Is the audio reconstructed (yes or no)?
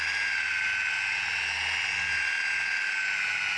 no